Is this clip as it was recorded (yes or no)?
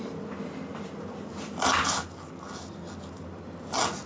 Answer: yes